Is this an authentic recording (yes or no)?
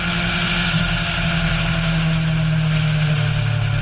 yes